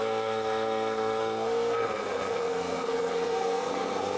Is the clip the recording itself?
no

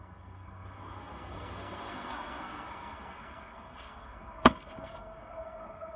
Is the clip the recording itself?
no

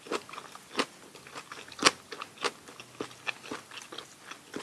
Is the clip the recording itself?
yes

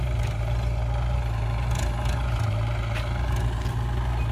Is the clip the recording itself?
yes